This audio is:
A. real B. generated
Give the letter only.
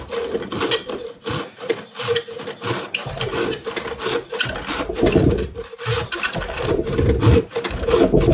A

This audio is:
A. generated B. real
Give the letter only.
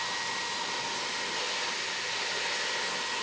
B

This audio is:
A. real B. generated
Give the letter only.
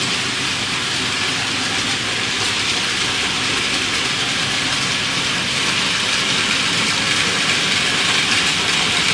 A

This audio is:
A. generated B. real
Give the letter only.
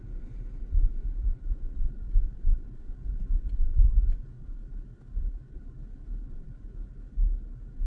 B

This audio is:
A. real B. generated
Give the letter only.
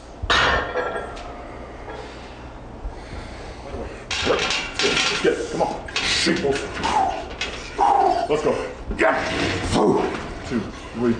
A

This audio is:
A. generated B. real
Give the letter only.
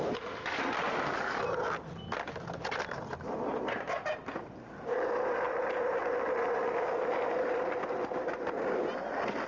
B